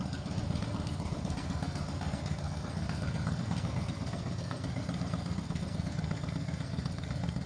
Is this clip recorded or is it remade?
remade